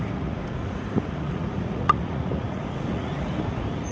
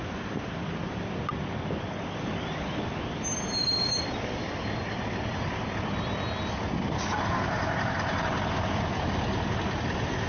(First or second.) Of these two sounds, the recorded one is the second